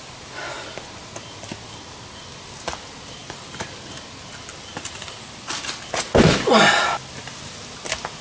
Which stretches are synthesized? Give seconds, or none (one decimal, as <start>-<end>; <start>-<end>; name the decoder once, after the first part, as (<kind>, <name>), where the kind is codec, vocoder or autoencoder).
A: none